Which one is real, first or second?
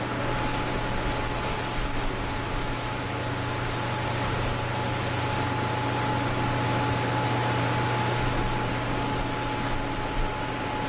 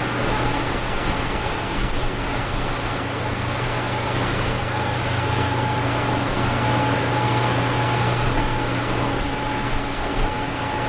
first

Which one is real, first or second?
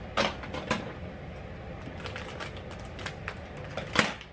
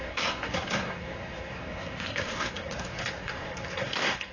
first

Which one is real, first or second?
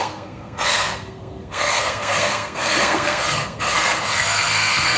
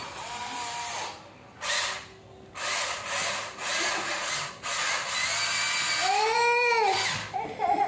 second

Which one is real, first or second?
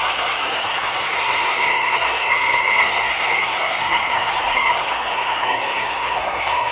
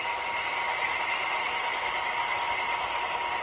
second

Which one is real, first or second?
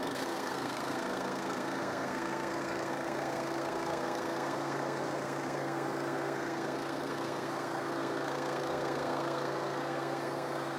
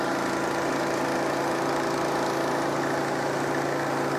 second